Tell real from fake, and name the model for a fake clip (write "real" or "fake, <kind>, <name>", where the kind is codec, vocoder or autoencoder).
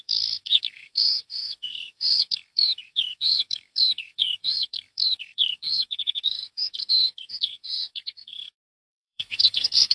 fake, codec, SNAC